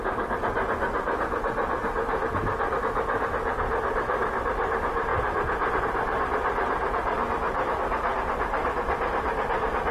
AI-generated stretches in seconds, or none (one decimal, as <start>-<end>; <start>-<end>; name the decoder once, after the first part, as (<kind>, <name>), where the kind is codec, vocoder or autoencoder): none

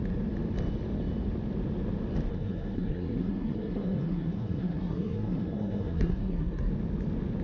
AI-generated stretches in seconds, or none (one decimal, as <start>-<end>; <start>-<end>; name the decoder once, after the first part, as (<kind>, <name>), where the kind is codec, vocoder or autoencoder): 2.3-6.7 (codec, SNAC)

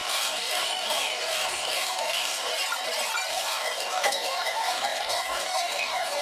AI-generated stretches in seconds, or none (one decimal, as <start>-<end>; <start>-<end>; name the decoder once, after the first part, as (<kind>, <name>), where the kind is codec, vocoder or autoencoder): 0.0-2.5 (codec, DAC); 3.3-6.2

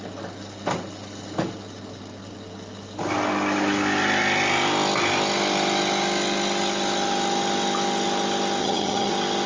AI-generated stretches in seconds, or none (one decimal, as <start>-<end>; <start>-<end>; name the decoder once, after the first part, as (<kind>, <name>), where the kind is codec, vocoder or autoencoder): 8.6-9.1 (vocoder, HiFi-GAN)